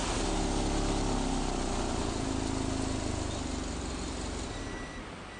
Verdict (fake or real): real